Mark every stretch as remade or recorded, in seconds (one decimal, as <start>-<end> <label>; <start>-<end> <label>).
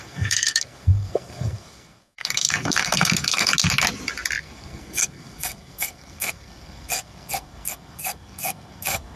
0.0-3.5 remade; 3.5-4.4 recorded; 4.4-9.2 remade